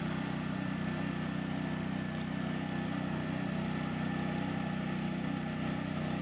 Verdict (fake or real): real